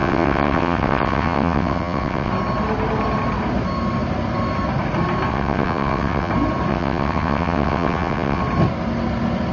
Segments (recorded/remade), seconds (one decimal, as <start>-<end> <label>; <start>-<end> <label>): 0.0-2.3 remade; 2.3-5.3 recorded; 5.3-6.3 remade; 6.3-6.7 recorded; 6.7-8.4 remade; 8.4-9.5 recorded